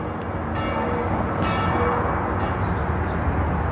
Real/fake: real